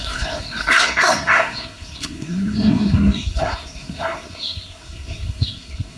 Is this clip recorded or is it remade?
remade